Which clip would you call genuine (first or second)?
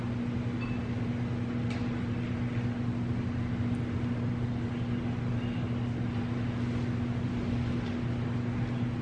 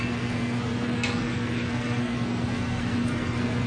first